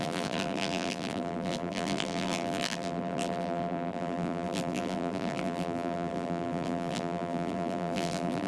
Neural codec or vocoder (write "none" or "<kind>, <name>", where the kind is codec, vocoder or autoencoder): vocoder, BigVGAN v2